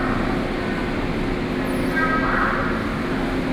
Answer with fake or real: real